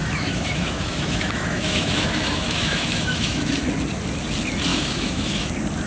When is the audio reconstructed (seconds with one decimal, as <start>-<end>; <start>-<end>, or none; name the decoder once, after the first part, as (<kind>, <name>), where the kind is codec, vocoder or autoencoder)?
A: 0.0-3.5 (autoencoder, DAC-VAE); 4.7-5.5